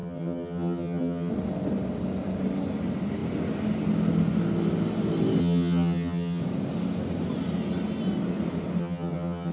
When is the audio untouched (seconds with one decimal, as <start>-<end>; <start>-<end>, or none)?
1.3-5.4; 6.4-8.8